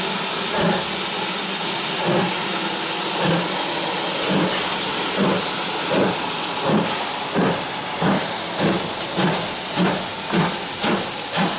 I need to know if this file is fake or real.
real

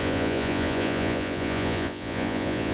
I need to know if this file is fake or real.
fake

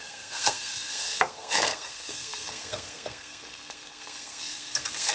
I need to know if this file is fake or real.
fake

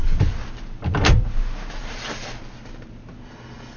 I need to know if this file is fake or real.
real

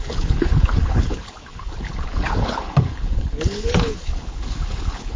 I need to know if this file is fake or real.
fake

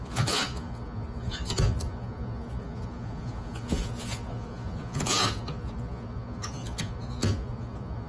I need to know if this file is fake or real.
fake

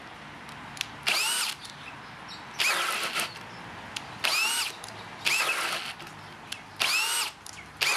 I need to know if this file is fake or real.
real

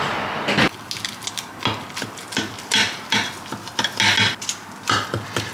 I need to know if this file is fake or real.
real